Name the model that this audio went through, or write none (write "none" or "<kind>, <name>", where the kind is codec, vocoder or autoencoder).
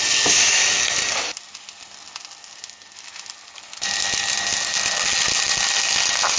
none